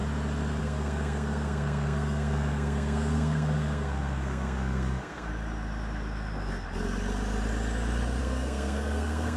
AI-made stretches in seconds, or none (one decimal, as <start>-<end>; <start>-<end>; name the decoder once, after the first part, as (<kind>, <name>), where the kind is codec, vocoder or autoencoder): 0.6-5.3 (codec, SNAC); 8.2-9.4